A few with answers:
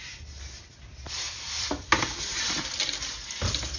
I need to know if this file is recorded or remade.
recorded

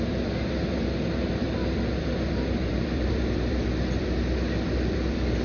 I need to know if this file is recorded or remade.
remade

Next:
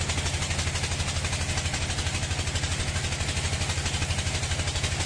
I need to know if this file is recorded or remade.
recorded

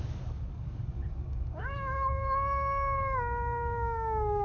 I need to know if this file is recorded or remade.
remade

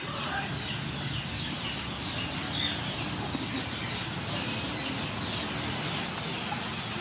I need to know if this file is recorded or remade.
recorded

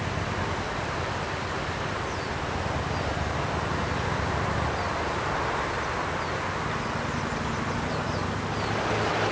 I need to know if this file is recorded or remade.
recorded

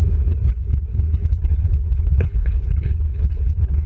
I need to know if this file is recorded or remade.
remade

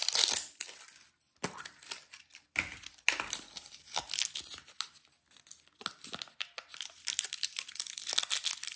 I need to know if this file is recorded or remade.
recorded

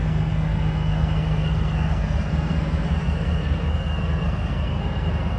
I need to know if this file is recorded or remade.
remade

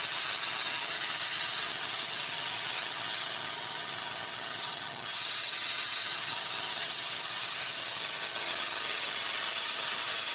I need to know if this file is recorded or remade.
remade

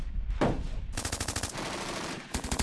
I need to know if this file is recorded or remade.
remade